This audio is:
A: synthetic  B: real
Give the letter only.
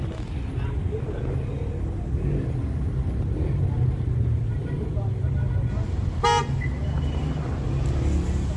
B